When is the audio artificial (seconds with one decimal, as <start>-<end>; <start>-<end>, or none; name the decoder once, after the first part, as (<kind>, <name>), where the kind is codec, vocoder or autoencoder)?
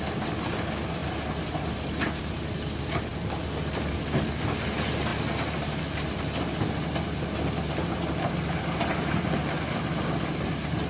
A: none